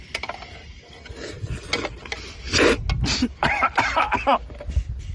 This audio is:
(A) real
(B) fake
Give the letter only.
A